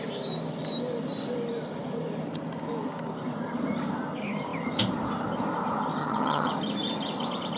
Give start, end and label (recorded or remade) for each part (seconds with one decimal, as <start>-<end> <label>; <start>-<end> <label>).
0.0-6.0 recorded; 6.0-6.5 remade; 6.5-7.6 recorded